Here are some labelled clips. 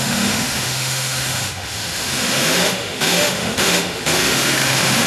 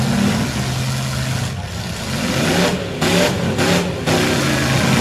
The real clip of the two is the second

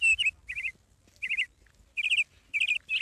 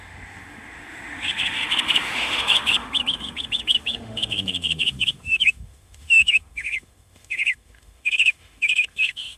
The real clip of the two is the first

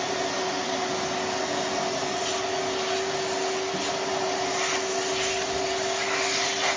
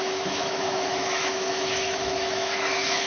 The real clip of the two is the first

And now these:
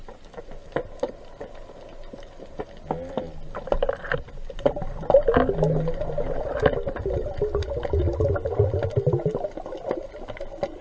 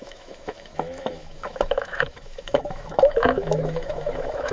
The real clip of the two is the first